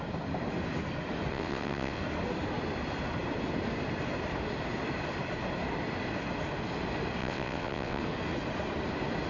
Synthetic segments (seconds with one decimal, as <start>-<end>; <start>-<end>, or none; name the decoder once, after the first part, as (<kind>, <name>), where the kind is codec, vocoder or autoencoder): 1.3-2.0 (vocoder, WaveNeXt); 7.2-8.0